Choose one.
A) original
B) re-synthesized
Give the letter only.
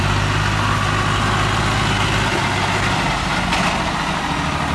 A